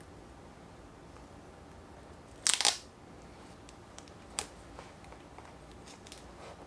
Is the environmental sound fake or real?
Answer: real